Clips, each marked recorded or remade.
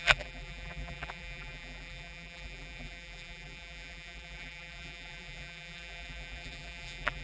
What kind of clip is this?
remade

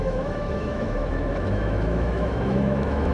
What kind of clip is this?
remade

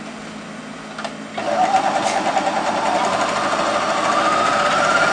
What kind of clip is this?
recorded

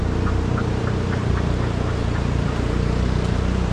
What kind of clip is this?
remade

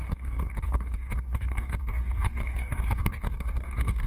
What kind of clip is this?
remade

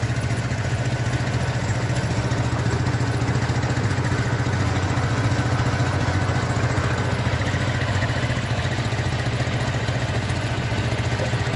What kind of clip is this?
remade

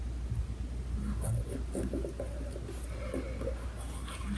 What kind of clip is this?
recorded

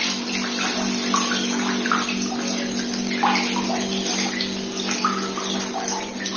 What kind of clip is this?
recorded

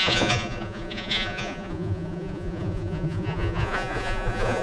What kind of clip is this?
remade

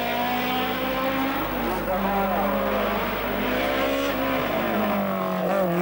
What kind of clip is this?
recorded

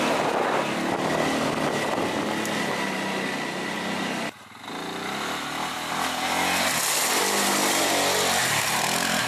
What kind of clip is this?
recorded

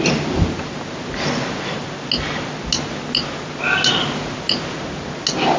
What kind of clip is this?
recorded